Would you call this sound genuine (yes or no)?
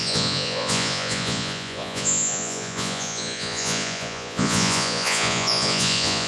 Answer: no